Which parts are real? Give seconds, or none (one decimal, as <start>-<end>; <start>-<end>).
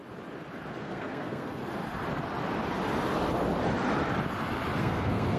0.0-0.8; 1.6-4.8